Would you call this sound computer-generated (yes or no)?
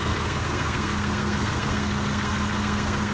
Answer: yes